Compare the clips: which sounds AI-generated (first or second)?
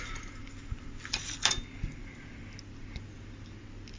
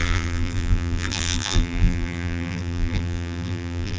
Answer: second